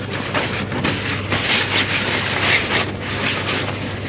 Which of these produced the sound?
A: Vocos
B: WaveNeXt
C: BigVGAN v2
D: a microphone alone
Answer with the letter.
D